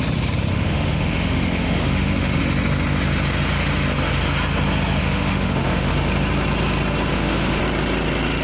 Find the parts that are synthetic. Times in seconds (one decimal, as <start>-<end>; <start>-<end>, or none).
0.5-2.4; 5.0-5.9; 7.1-7.6